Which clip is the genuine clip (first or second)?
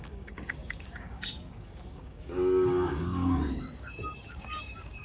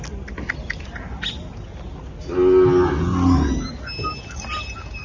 second